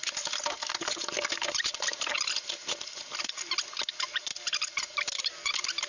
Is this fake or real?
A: real